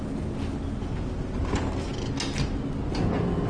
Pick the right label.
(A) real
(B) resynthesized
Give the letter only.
A